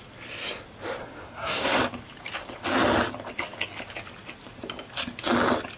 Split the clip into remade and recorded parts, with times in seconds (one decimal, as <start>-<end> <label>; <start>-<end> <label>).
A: 0.0-1.0 recorded; 1.0-1.8 remade; 1.8-5.8 recorded